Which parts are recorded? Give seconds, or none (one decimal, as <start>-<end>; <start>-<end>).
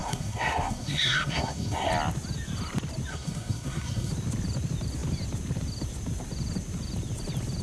1.9-3.1; 4.1-7.6